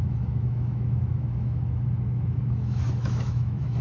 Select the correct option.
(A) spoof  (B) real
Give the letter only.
A